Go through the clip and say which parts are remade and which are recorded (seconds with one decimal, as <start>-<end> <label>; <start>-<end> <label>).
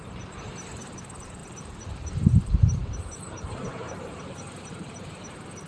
0.0-5.7 remade